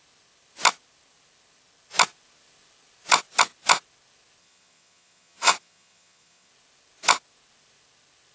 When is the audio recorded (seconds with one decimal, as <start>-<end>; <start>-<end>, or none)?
0.0-4.4; 6.5-8.3